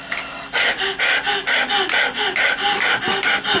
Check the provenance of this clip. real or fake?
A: real